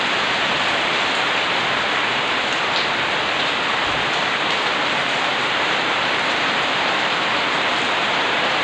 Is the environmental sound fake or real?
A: fake